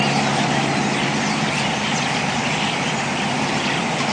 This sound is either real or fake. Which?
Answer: real